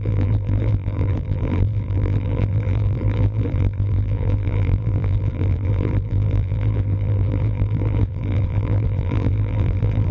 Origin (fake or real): fake